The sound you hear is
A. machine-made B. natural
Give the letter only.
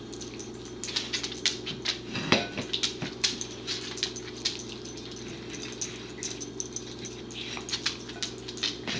B